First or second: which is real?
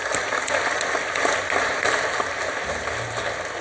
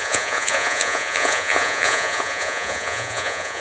first